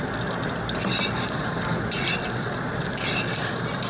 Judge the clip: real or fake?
real